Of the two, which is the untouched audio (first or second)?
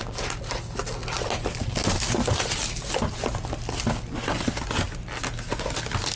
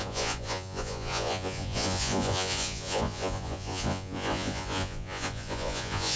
first